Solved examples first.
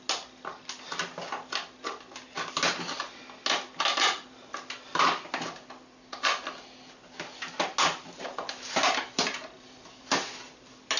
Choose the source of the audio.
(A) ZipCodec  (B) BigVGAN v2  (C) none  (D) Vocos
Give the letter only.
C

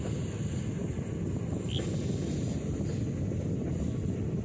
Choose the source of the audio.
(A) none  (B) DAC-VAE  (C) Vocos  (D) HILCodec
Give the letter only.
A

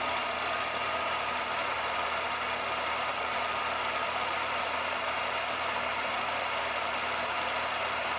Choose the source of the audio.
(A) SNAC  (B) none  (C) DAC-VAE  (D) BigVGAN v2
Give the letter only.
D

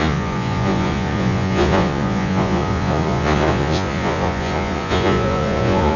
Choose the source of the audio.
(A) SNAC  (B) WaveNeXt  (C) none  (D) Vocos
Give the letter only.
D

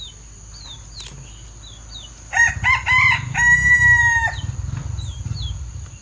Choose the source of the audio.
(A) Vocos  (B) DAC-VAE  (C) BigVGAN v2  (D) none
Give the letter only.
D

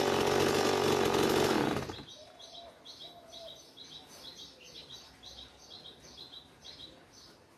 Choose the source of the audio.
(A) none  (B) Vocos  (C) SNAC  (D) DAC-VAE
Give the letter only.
A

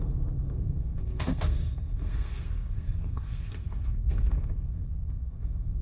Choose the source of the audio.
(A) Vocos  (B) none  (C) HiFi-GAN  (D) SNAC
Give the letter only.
D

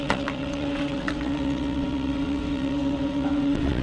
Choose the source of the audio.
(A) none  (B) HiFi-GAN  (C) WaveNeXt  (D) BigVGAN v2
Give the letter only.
C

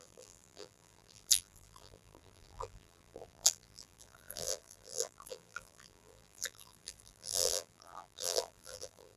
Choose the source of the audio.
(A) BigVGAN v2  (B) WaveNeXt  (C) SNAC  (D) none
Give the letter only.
A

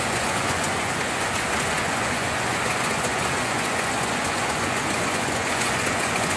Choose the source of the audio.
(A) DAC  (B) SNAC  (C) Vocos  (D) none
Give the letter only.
C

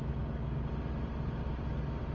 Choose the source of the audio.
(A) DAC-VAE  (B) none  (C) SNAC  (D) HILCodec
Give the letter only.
B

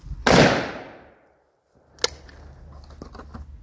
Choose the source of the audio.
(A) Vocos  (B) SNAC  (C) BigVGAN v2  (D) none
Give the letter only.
D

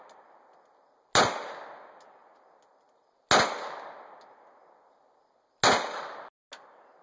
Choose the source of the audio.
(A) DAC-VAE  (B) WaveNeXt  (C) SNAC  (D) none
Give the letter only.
D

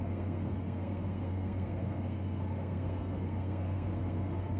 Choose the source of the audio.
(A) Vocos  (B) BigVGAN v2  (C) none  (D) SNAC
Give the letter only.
D